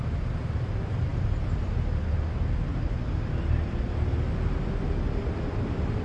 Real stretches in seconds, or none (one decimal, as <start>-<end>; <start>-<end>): 0.0-6.0